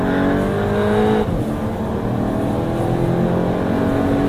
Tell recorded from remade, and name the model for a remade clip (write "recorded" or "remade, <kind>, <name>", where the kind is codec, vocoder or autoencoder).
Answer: recorded